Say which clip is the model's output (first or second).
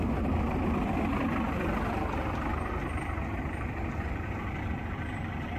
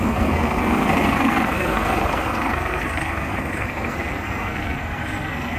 second